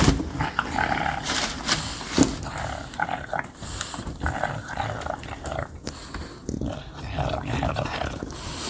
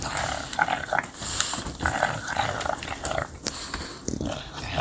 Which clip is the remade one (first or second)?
second